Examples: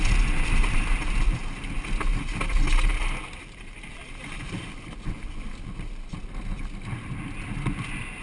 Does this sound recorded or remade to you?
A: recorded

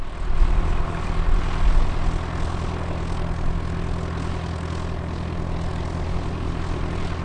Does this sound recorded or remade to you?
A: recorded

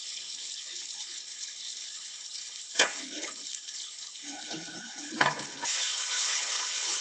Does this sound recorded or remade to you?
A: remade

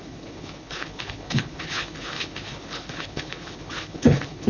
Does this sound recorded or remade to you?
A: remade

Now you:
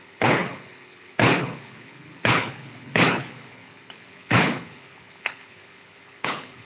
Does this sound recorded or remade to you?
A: remade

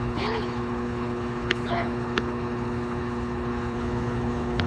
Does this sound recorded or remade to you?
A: remade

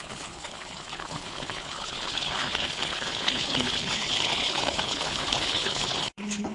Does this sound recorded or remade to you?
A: remade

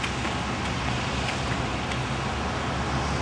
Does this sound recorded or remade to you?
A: recorded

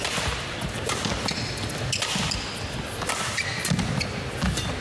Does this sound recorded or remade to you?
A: recorded